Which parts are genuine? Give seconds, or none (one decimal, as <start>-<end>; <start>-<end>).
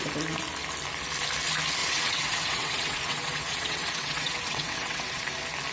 0.0-1.8; 5.2-5.7